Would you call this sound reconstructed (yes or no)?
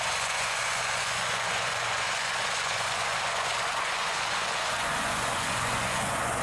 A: yes